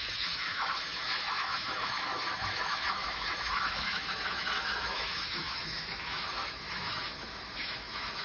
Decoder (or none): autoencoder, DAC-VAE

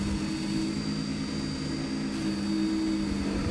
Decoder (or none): none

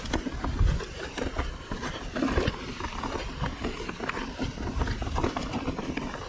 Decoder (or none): none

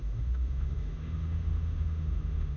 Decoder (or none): autoencoder, DAC-VAE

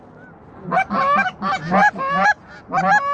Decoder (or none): none